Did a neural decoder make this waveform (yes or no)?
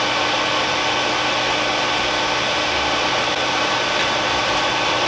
no